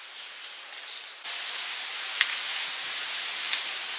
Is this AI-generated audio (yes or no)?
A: no